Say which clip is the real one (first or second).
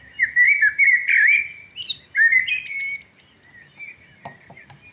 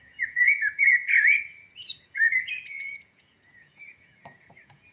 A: first